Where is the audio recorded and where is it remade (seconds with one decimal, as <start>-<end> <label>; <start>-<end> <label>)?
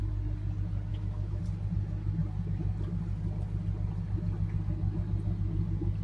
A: 0.0-0.9 recorded; 0.9-1.4 remade; 1.4-6.0 recorded